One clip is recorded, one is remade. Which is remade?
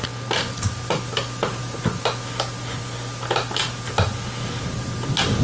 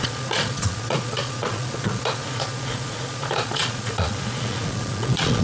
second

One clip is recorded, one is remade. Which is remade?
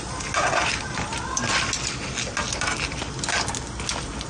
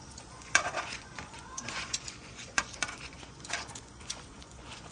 second